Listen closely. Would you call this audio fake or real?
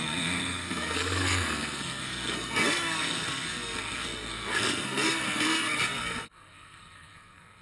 fake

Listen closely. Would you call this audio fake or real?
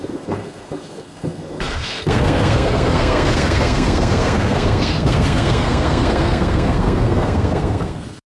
fake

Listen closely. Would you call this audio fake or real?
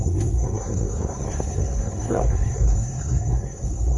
fake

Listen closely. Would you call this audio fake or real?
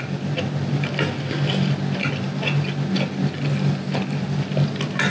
real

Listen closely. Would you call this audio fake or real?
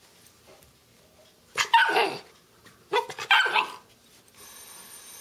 real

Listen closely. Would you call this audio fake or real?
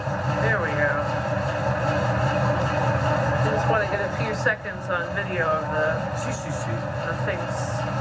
real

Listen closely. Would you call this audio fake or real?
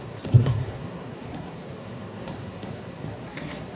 fake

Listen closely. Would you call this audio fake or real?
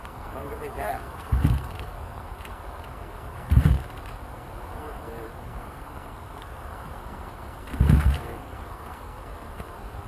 fake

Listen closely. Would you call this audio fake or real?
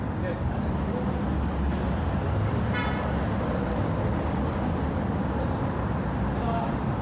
real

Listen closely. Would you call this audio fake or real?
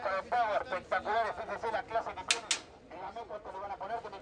real